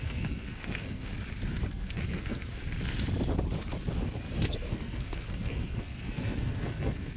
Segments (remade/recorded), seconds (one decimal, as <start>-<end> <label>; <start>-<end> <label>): 0.0-1.1 remade; 1.1-1.7 recorded; 1.7-2.6 remade; 2.6-4.2 recorded; 4.2-7.2 remade